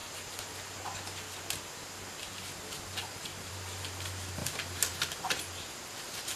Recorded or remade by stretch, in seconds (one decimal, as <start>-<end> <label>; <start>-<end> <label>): 0.0-3.0 recorded; 3.0-3.5 remade; 3.5-4.4 recorded; 4.4-5.5 remade; 5.5-6.4 recorded